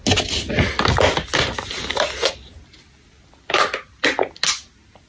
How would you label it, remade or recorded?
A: recorded